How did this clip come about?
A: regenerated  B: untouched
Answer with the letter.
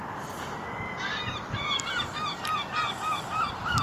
B